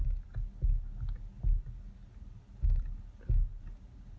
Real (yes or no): yes